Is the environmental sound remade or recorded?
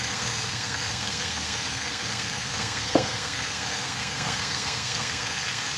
remade